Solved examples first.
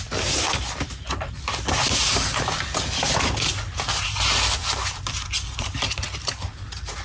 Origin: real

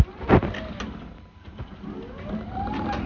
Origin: real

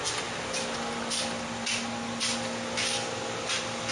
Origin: real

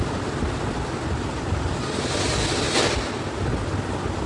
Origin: real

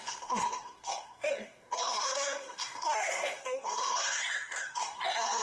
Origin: fake